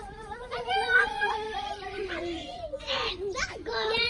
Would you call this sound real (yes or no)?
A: no